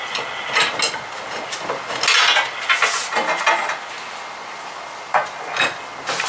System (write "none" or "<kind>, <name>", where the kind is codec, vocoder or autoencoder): none